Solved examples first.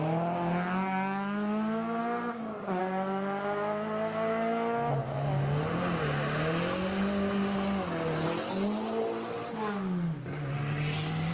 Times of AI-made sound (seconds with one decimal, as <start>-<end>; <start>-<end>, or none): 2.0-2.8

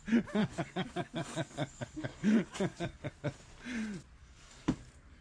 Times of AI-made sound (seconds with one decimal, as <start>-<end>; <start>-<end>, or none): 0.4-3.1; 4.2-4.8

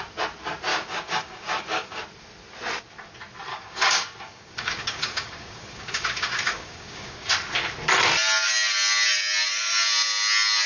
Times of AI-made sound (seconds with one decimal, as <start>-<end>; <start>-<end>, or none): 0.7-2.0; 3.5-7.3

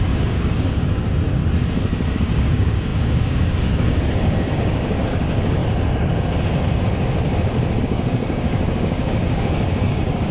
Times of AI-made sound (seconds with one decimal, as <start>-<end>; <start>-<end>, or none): 0.0-1.4; 2.2-5.6; 7.8-10.3

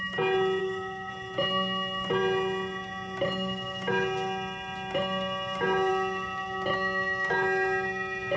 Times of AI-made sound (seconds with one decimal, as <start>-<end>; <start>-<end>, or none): 0.6-1.1